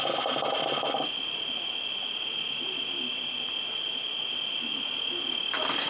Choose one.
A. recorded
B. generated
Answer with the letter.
A